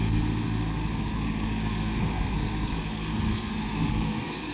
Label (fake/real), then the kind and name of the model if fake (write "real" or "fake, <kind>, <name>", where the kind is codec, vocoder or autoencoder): fake, codec, SNAC